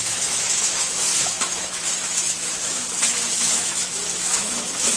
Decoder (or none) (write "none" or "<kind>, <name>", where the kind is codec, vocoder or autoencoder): autoencoder, DAC-VAE